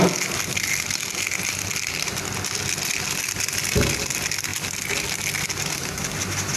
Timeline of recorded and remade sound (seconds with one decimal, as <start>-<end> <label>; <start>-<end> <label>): 0.0-6.6 recorded